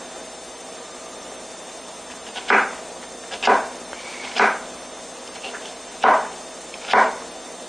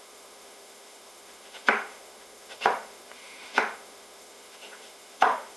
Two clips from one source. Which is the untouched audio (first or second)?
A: first